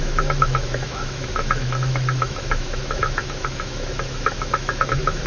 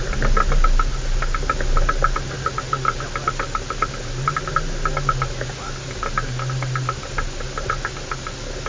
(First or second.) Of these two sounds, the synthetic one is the first